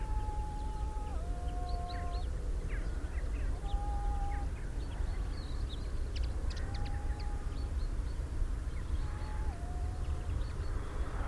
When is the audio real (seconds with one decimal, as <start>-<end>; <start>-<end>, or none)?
1.1-6.2